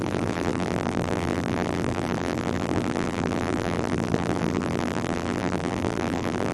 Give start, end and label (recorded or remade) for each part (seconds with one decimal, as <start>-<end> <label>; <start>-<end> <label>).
0.0-6.5 remade